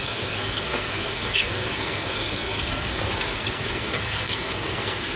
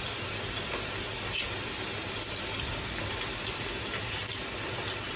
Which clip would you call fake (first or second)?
first